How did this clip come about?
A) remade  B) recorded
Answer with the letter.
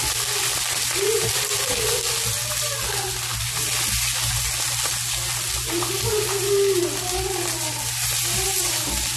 B